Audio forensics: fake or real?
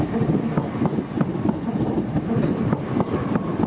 real